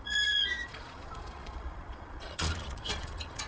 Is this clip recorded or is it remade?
remade